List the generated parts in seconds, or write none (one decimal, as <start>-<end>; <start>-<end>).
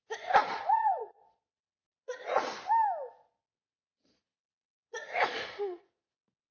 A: 0.4-2.5; 3.8-6.1